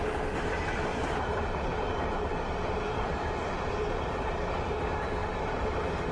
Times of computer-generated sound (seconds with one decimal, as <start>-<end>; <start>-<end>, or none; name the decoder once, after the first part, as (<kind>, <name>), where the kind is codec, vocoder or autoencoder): 0.9-4.6 (vocoder, BigVGAN v2); 5.2-6.1